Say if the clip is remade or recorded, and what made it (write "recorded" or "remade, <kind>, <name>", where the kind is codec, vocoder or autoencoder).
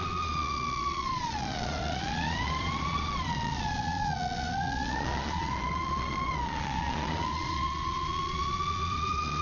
remade, vocoder, Vocos